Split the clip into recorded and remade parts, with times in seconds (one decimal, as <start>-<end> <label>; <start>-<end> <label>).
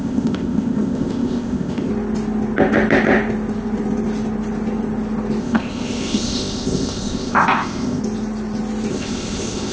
0.0-1.9 remade; 1.9-5.4 recorded; 5.4-8.0 remade; 8.0-8.9 recorded; 8.9-9.7 remade